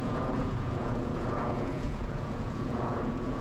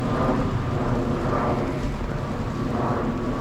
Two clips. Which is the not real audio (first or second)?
first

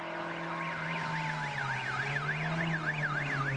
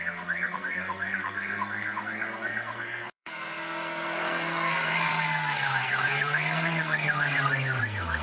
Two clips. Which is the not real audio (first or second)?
second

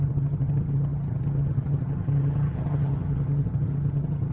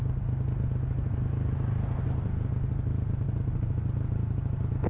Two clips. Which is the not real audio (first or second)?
first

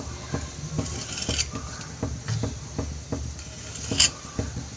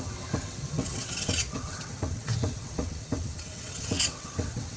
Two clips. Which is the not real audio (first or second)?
second